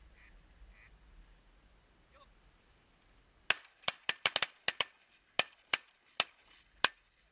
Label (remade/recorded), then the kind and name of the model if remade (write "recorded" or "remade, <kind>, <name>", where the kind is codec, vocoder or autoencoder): recorded